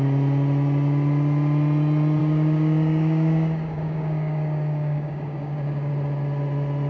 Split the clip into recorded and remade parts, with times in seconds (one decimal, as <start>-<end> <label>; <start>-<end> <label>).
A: 0.0-2.2 recorded; 2.2-5.9 remade; 5.9-6.9 recorded